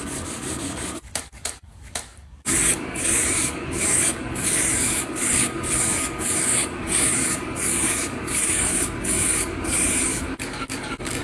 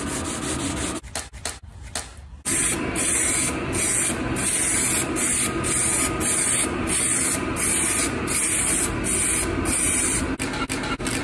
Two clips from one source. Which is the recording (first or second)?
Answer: second